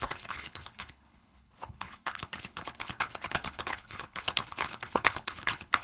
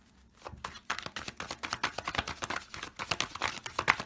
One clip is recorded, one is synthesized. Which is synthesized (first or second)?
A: first